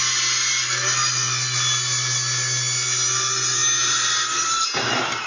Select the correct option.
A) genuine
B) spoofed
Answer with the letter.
A